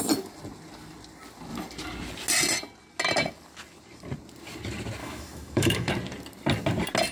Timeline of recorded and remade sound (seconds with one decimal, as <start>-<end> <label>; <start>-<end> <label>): 0.0-5.0 recorded; 5.0-5.9 remade; 5.9-7.1 recorded